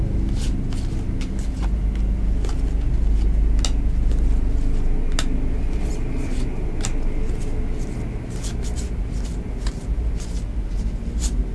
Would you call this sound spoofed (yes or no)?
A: no